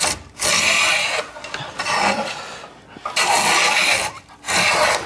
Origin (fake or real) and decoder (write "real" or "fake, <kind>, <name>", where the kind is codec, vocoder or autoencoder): real